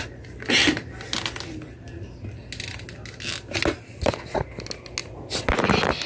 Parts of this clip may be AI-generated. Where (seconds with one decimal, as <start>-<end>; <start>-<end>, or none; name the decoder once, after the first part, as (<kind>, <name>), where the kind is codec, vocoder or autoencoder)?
none